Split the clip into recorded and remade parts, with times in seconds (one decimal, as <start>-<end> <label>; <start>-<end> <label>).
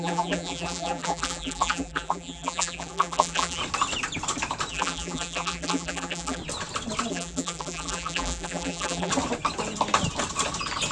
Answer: 0.0-3.6 remade; 3.6-4.7 recorded; 4.7-6.4 remade; 6.4-7.1 recorded; 7.1-9.1 remade; 9.1-10.9 recorded